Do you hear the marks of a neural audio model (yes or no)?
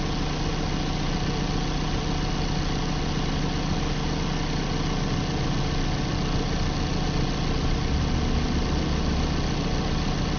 no